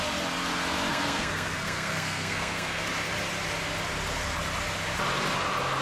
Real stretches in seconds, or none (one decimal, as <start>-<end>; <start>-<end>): 0.0-0.9; 2.8-5.8